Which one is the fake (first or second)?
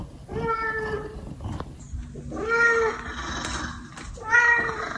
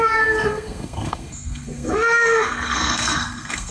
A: second